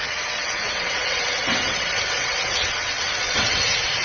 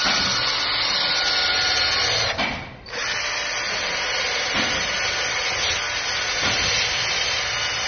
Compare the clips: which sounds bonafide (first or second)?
second